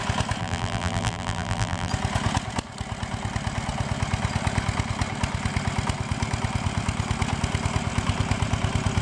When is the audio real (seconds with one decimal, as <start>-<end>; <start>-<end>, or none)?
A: 0.0-0.4; 1.9-9.0